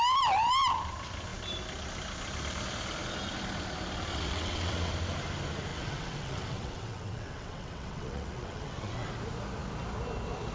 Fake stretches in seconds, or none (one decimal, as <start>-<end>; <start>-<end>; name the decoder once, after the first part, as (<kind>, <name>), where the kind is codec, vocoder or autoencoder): 4.1-4.9 (vocoder, WaveNeXt); 5.7-9.1